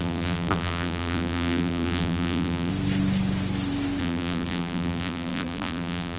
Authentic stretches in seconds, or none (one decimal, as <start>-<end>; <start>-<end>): 2.7-4.0